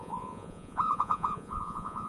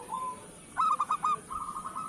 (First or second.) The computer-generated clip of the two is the first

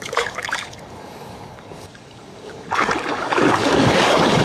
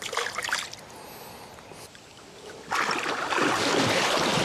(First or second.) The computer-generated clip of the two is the first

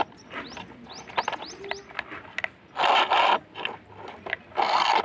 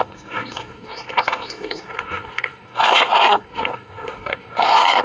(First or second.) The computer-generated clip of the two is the second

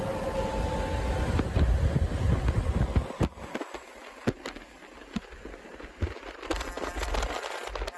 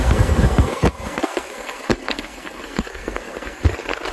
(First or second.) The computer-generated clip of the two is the second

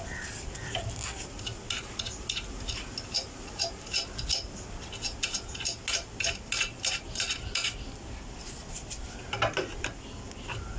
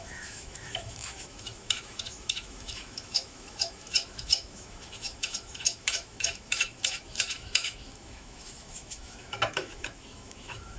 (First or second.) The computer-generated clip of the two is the second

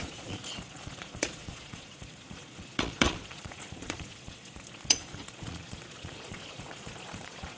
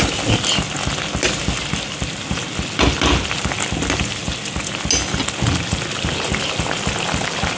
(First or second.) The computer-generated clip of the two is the first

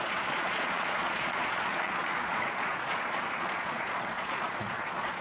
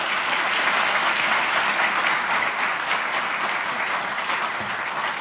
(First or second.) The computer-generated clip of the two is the first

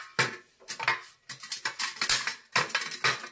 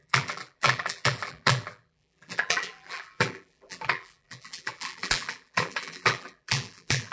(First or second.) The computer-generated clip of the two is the second